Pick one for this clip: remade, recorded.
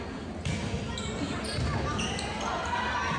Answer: recorded